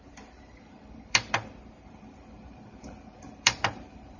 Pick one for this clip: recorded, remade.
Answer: remade